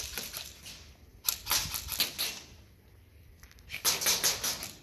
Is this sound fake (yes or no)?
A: no